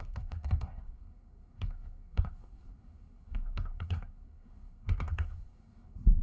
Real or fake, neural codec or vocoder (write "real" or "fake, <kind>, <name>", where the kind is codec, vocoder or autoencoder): fake, codec, SNAC